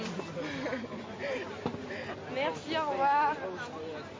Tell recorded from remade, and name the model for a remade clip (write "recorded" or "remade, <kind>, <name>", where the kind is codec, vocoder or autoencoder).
recorded